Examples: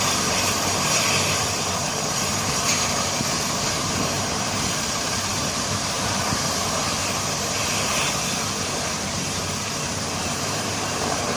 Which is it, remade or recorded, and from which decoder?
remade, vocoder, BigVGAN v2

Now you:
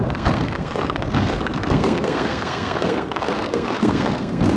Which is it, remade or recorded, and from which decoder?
remade, codec, SNAC